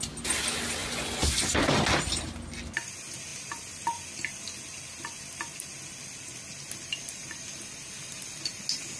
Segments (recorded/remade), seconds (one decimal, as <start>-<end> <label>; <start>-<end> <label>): 0.0-0.8 recorded; 0.8-1.4 remade; 1.4-9.0 recorded